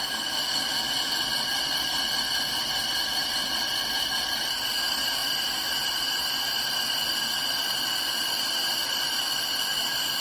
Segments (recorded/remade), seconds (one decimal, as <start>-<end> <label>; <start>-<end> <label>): 0.0-10.2 remade